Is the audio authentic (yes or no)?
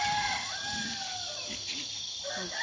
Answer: yes